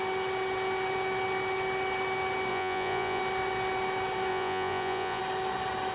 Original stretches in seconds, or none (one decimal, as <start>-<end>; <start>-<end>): 0.0-2.5; 3.2-4.3; 5.2-5.9